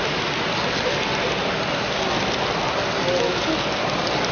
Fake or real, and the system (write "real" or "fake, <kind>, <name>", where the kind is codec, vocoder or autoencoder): real